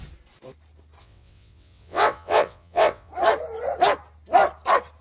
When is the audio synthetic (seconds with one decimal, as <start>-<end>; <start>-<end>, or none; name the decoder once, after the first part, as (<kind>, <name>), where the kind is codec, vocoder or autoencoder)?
1.0-3.1 (vocoder, WaveNeXt)